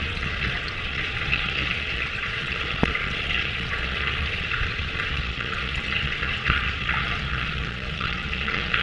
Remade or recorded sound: remade